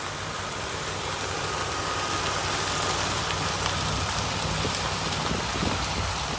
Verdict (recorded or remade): recorded